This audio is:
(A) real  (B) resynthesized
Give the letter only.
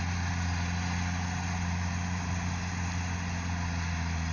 A